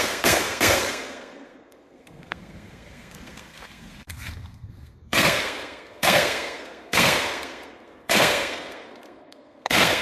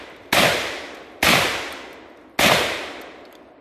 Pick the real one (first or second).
second